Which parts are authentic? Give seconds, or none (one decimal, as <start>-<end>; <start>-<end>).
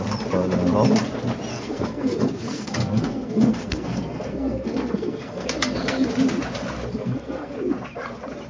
0.0-1.5; 6.1-6.9; 7.5-8.5